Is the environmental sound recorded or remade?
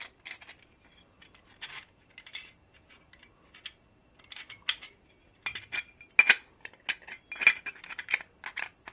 recorded